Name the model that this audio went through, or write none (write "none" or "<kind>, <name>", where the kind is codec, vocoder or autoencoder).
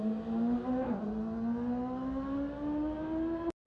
none